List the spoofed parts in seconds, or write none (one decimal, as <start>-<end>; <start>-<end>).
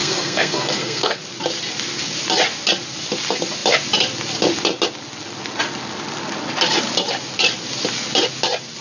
0.0-1.2